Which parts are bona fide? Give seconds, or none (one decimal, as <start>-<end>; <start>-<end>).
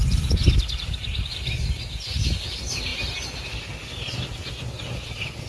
0.0-5.5